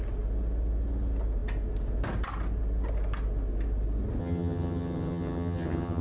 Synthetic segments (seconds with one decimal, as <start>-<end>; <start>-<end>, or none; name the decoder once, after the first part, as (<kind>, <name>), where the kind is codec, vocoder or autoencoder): 4.2-6.0 (vocoder, HiFi-GAN)